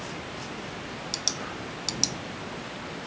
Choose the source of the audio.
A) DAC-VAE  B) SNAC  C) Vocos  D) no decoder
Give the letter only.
D